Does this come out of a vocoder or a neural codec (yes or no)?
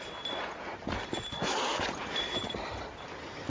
no